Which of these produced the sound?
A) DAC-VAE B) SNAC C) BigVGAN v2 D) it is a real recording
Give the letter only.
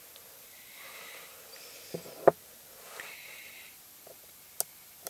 D